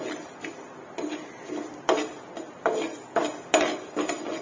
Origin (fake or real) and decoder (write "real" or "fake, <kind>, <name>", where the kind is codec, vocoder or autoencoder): real